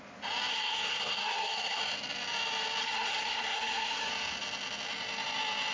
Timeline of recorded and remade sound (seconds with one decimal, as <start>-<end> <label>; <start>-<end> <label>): 0.0-0.5 recorded; 0.5-1.8 remade; 1.8-2.8 recorded; 2.8-4.1 remade; 4.1-5.7 recorded